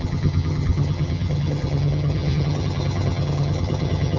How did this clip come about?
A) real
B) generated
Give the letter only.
B